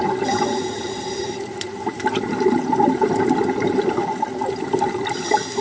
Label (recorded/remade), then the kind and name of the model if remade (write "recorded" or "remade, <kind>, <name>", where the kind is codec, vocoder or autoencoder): recorded